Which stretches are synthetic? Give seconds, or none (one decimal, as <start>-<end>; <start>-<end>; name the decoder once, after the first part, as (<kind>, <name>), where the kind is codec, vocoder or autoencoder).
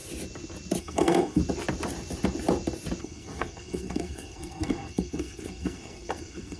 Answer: 0.8-1.4 (codec, SNAC); 3.0-6.6